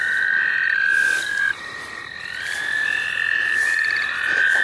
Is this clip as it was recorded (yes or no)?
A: no